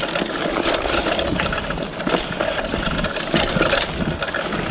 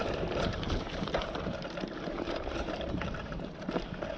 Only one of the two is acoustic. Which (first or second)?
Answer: first